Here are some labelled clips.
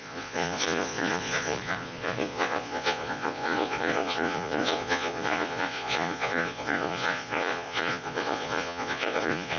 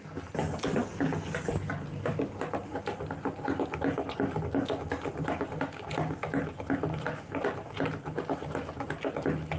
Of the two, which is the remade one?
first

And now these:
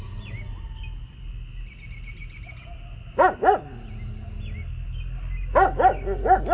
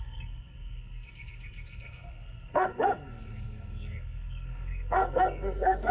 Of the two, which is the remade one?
second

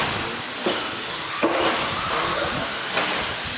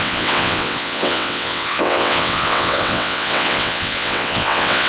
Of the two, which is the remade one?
second